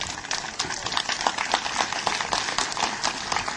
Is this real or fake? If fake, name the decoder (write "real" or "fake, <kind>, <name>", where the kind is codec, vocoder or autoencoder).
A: real